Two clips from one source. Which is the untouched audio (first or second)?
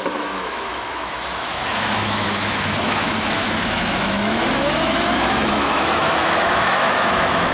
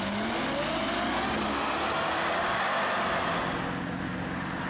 second